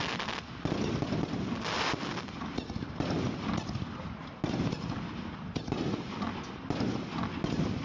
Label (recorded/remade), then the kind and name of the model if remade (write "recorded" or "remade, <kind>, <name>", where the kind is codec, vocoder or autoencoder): recorded